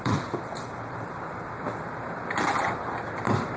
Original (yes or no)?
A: yes